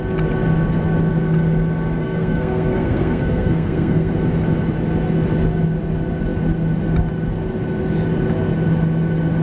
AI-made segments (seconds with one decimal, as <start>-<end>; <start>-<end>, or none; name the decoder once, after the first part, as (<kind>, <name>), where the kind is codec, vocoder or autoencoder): 2.0-4.1 (codec, SNAC)